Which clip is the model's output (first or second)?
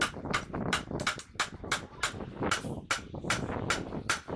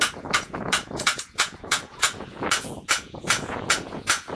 second